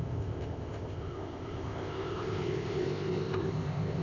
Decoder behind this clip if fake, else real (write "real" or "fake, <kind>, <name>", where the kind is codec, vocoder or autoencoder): fake, codec, ZipCodec